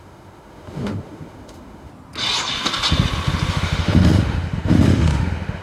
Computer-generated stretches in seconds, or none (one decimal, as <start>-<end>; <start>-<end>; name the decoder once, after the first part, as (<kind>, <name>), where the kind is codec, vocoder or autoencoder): 0.0-1.9 (autoencoder, DAC-VAE); 3.5-5.6